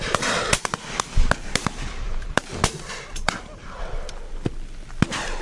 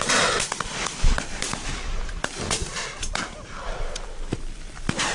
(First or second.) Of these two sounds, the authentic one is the first